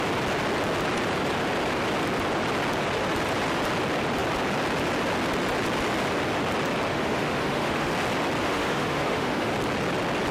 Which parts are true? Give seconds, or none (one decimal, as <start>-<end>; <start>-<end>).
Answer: 0.0-6.9; 7.9-8.4; 9.5-10.3